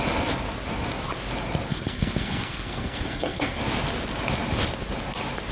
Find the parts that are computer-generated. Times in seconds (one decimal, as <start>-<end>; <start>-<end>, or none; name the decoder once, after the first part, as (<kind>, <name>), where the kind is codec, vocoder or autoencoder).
1.7-3.6 (codec, SNAC)